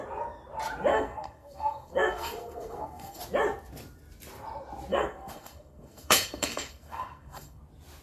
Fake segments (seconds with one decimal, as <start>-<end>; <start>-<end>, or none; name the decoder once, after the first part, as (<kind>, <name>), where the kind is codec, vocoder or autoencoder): 0.9-3.2 (codec, SNAC); 4.9-7.6